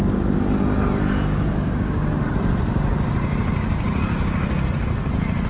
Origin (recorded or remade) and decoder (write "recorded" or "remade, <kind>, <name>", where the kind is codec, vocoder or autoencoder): recorded